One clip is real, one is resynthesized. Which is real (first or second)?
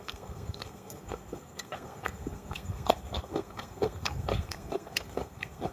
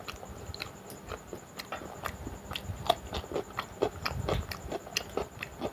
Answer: second